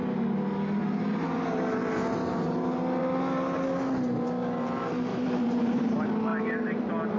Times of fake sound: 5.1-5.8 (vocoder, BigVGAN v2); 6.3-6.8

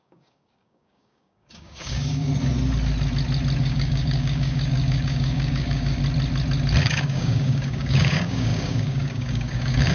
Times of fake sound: 0.0-2.3 (codec, DAC); 3.6-6.0; 6.8-9.9